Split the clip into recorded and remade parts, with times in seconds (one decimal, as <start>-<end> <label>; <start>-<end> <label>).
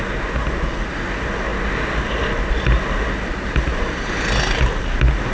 0.0-5.3 recorded